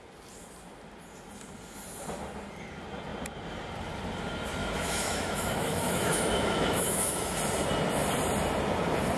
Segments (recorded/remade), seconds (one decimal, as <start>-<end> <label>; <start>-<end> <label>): 0.0-4.6 recorded; 4.6-7.3 remade; 7.3-9.2 recorded